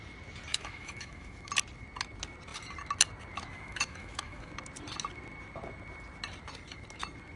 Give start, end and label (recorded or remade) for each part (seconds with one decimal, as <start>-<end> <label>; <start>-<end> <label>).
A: 0.0-0.5 recorded; 0.5-1.5 remade; 1.5-3.5 recorded; 3.5-4.5 remade; 4.5-7.4 recorded